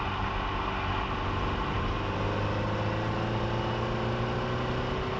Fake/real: real